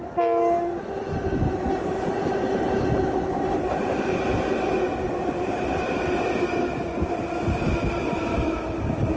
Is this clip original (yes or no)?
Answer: yes